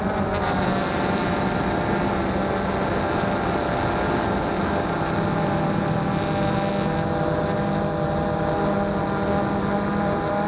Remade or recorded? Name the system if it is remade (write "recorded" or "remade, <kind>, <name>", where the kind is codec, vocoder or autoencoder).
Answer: recorded